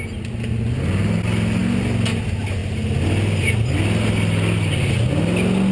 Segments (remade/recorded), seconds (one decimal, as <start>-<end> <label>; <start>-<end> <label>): 0.0-5.7 recorded